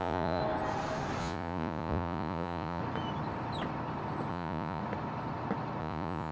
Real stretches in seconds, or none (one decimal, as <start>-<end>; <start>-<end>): 0.4-1.2; 2.8-4.3; 4.8-5.8